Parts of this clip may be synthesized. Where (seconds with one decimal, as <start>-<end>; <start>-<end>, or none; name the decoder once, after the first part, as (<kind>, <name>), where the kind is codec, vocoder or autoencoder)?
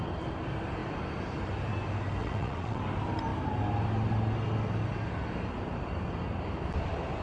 2.2-2.8 (vocoder, WaveNeXt)